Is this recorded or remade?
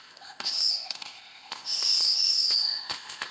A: remade